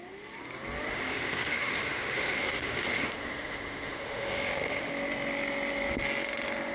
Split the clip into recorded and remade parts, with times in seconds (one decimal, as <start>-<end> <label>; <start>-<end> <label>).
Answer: 0.0-0.9 recorded; 0.9-4.9 remade; 4.9-6.7 recorded